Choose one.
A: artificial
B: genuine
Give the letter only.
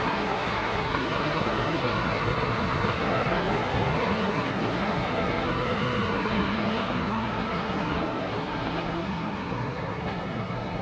A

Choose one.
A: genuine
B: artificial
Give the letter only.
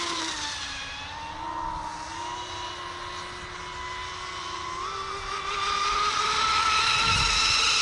A